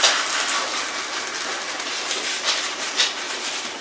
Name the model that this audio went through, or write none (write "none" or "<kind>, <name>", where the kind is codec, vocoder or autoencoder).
none